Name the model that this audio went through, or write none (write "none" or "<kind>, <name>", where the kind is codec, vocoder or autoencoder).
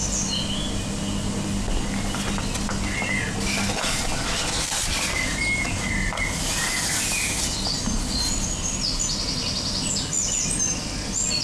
none